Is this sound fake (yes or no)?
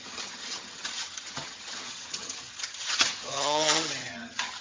yes